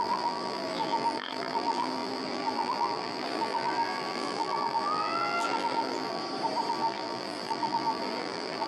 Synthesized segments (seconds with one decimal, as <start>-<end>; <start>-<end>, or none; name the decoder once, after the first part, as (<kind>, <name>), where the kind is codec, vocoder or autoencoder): 0.0-6.2 (vocoder, BigVGAN v2); 6.7-8.7